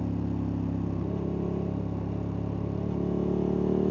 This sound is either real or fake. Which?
real